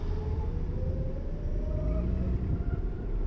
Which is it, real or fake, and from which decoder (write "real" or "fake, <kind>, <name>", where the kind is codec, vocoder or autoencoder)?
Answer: real